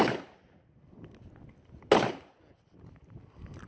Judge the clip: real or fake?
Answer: real